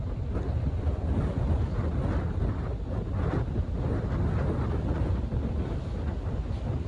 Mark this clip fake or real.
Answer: real